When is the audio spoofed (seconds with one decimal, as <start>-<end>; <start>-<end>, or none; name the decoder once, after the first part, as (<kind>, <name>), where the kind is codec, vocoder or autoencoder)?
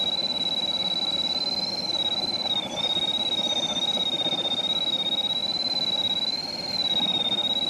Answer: none